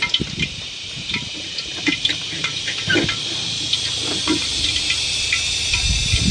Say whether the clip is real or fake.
real